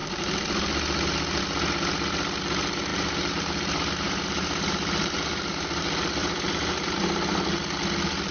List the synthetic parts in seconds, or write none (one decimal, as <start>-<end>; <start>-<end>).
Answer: 2.9-5.8; 6.2-7.4